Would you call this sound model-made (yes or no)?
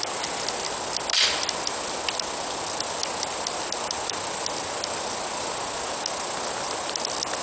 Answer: no